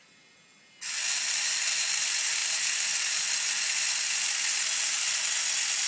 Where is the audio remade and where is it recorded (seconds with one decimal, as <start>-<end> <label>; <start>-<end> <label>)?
0.0-5.9 recorded